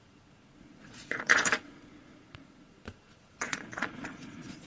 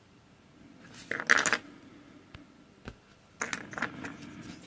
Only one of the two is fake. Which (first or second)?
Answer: first